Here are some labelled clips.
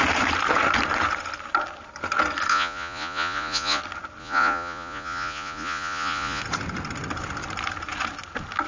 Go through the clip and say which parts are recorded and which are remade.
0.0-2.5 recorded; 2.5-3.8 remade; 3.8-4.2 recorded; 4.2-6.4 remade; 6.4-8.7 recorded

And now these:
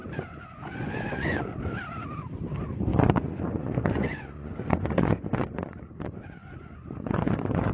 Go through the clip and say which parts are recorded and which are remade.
0.0-1.5 remade; 1.5-2.9 recorded; 2.9-7.7 remade

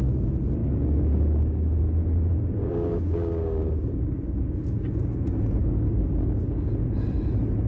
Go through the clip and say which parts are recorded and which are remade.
0.0-0.6 recorded; 0.6-1.8 remade; 1.8-2.6 recorded; 2.6-4.4 remade; 4.4-5.6 recorded; 5.6-6.7 remade; 6.7-7.7 recorded

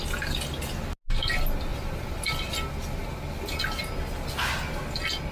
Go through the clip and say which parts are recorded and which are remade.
0.0-1.7 recorded; 1.7-2.5 remade; 2.5-3.0 recorded; 3.0-3.9 remade; 3.9-5.3 recorded

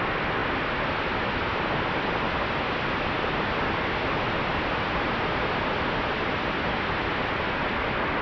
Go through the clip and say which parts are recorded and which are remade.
0.0-8.2 recorded

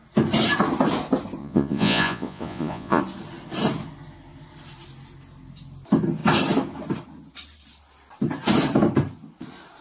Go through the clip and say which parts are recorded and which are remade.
0.0-1.4 recorded; 1.4-3.0 remade; 3.0-9.8 recorded

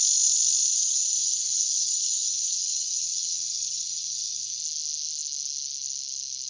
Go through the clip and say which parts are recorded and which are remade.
0.0-0.7 recorded; 0.7-4.6 remade; 4.6-6.5 recorded

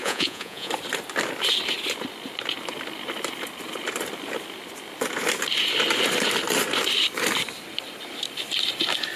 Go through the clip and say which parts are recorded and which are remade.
0.0-0.7 remade; 0.7-9.2 recorded